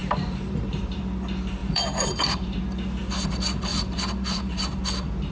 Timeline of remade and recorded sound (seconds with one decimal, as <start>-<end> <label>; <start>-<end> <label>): 0.0-1.0 remade; 1.0-1.6 recorded; 1.6-2.6 remade; 2.6-3.7 recorded; 3.7-4.8 remade; 4.8-5.3 recorded

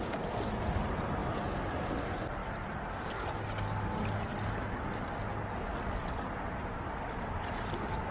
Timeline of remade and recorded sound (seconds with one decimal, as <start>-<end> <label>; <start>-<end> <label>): 0.0-8.1 recorded

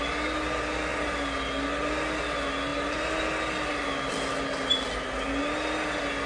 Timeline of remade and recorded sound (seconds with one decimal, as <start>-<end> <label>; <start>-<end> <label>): 0.0-6.3 recorded

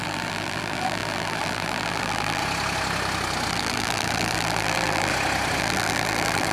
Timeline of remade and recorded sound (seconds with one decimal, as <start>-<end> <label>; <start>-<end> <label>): 0.0-2.4 remade; 2.4-3.5 recorded; 3.5-5.1 remade; 5.1-5.6 recorded; 5.6-6.5 remade

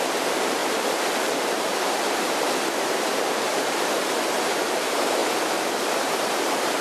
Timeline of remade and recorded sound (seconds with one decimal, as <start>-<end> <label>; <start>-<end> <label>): 0.0-5.2 remade; 5.2-5.8 recorded; 5.8-6.8 remade

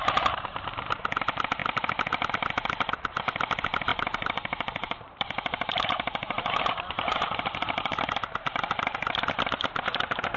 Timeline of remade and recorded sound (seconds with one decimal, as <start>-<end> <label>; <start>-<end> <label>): 0.0-3.9 recorded; 3.9-9.2 remade; 9.2-10.4 recorded